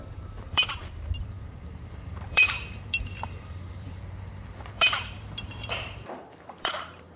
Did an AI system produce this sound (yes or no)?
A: yes